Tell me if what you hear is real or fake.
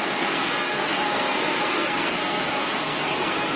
fake